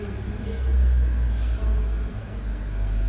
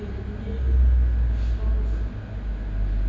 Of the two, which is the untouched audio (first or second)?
second